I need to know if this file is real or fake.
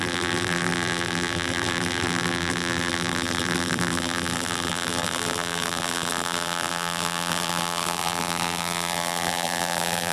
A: fake